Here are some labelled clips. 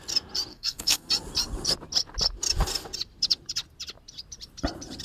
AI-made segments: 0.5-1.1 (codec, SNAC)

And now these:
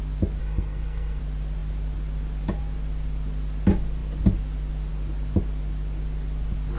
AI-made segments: 0.4-1.2 (codec, SNAC)